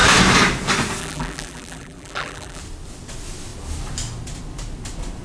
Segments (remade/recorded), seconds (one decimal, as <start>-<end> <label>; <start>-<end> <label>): 0.0-1.0 recorded; 1.0-2.6 remade; 2.6-5.2 recorded